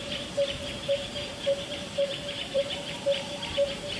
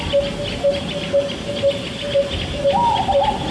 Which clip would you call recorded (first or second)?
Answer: second